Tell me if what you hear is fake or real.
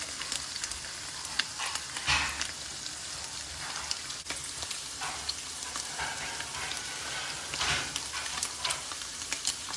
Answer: real